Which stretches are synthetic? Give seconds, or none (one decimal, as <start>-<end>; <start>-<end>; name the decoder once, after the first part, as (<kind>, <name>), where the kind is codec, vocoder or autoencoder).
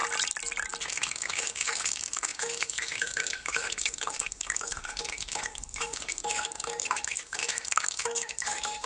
0.8-8.9 (autoencoder, DAC-VAE)